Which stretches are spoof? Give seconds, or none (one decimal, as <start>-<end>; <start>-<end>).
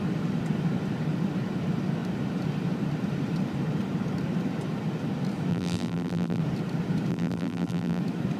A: 5.5-6.4; 7.1-8.0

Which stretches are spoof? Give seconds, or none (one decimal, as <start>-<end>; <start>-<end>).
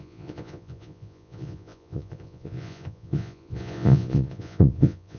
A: 0.0-5.2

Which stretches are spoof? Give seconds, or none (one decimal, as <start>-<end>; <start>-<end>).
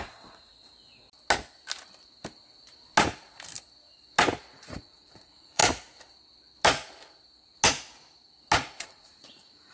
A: 0.0-0.5; 4.5-5.6; 8.8-9.7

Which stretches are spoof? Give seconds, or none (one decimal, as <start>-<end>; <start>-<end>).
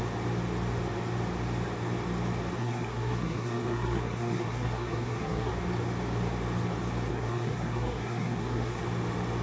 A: 2.6-5.5; 7.1-8.8